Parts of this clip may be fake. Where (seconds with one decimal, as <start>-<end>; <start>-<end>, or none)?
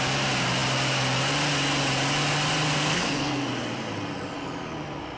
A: 2.7-3.5